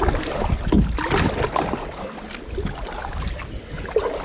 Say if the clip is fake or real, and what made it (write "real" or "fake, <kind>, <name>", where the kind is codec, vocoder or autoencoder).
real